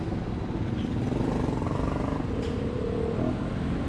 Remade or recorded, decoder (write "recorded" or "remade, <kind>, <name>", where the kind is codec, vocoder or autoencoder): recorded